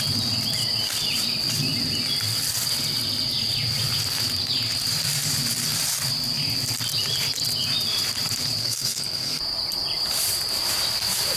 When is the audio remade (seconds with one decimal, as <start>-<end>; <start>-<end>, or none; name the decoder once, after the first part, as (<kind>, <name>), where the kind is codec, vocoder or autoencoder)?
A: 8.6-9.4 (codec, SNAC)